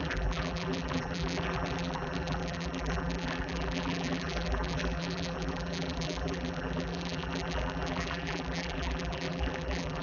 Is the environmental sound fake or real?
fake